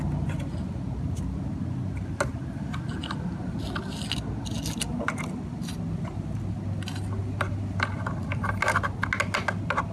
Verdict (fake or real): real